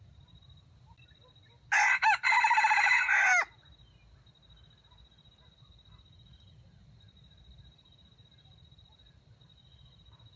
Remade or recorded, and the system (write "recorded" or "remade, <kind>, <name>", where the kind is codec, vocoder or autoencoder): recorded